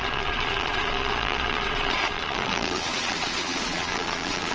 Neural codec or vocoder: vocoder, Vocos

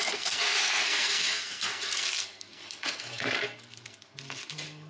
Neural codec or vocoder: codec, SNAC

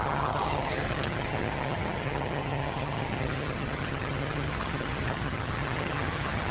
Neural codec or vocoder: vocoder, HiFi-GAN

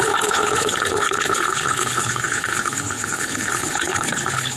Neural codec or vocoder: codec, HILCodec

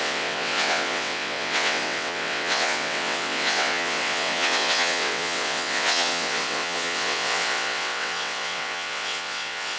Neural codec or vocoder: vocoder, WaveNeXt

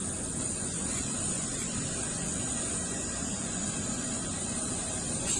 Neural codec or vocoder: vocoder, Vocos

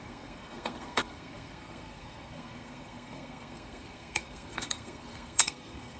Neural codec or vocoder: codec, SNAC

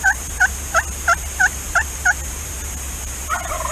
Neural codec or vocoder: none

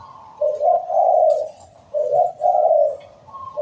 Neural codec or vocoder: none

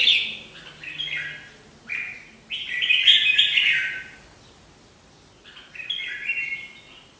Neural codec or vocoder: none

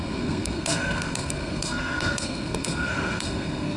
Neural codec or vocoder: codec, SNAC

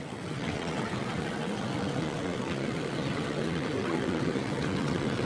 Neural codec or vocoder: vocoder, WaveNeXt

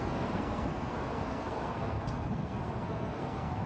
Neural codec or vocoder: codec, SNAC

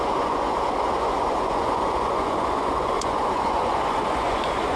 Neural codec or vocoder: vocoder, Vocos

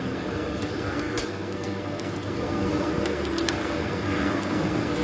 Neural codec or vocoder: codec, SNAC